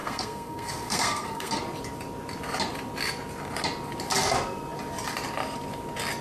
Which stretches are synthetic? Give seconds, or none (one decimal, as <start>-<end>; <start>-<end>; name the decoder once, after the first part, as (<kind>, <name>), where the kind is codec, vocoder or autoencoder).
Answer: 0.0-1.6 (codec, SNAC)